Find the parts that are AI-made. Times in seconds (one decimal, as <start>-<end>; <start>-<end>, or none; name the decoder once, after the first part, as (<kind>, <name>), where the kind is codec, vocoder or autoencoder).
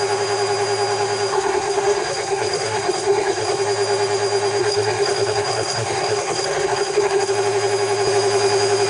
1.3-3.6 (codec, SNAC); 4.6-7.3